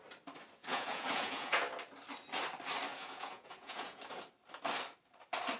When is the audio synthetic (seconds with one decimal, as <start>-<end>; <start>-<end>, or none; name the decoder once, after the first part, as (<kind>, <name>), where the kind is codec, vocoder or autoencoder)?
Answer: 0.7-1.6 (vocoder, Vocos); 2.9-4.0